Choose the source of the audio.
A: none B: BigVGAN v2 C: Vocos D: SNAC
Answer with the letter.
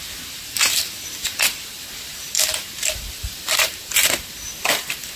B